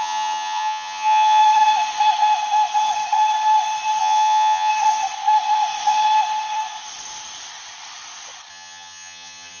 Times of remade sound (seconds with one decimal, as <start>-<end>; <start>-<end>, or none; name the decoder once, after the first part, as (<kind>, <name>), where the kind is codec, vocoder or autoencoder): 0.0-1.4 (vocoder, HiFi-GAN); 4.0-4.7; 8.5-9.6